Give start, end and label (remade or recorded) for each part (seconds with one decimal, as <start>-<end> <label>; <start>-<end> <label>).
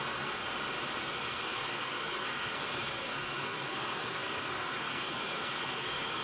0.0-0.4 remade; 0.4-1.0 recorded; 1.0-6.2 remade